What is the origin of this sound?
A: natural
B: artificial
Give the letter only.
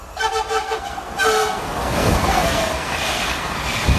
B